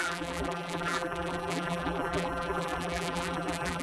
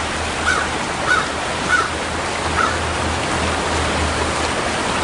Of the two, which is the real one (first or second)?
second